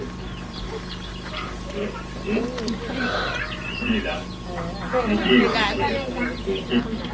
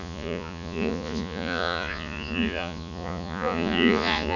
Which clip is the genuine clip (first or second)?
first